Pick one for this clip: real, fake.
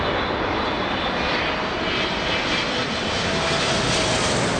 real